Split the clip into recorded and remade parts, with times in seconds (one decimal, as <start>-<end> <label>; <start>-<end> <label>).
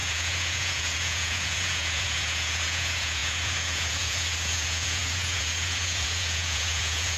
0.0-7.2 remade